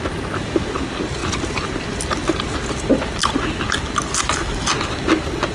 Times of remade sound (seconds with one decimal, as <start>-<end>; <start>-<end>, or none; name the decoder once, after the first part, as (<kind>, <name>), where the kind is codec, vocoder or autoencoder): none